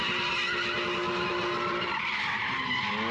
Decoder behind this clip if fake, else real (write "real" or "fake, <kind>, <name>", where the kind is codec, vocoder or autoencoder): real